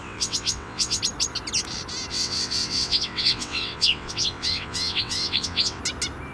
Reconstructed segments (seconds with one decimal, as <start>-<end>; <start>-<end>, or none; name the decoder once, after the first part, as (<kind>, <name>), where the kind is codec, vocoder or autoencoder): 0.0-1.0 (vocoder, WaveNeXt); 2.1-5.8